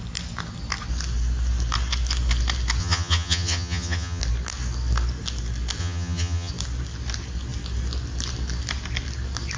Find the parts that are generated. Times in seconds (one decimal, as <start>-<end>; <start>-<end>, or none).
2.8-4.2; 5.8-6.5

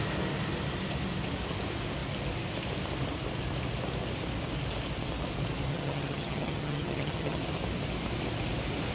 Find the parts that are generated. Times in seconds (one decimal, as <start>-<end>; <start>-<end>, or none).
5.7-7.4